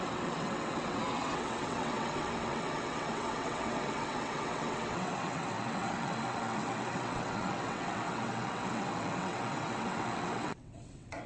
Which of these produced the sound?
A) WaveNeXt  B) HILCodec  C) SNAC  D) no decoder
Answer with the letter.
A